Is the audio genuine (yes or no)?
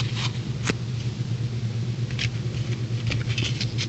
yes